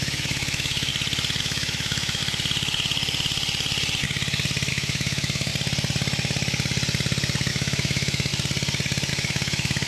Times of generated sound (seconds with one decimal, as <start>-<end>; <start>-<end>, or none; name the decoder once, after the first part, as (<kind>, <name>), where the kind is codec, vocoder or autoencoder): 0.0-0.9 (autoencoder, DAC-VAE); 1.4-2.2; 4.7-5.5; 7.5-8.3; 9.1-9.9